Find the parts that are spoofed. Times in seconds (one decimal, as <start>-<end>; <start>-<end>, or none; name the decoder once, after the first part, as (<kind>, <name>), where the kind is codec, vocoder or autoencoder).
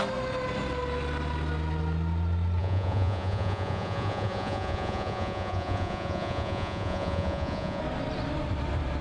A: 2.6-7.8 (vocoder, Vocos)